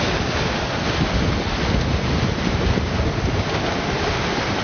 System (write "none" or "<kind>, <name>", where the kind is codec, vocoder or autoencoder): none